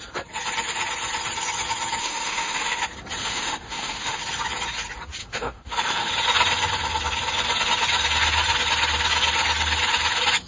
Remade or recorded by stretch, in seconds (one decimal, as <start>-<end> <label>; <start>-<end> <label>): 0.0-2.0 recorded; 2.0-2.8 remade; 2.8-3.2 recorded; 3.2-4.2 remade; 4.2-5.2 recorded; 5.2-6.1 remade; 6.1-10.5 recorded